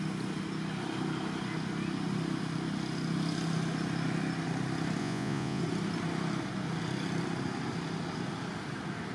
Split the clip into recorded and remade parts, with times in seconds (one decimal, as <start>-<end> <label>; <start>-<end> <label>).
0.0-5.0 recorded; 5.0-5.6 remade; 5.6-9.1 recorded